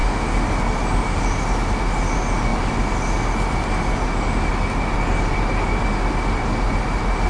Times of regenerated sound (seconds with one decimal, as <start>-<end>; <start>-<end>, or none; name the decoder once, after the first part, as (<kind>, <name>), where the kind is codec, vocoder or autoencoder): none